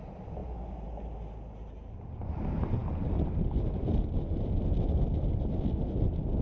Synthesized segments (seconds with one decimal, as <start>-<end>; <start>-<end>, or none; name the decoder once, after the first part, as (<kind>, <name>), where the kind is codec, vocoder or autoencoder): none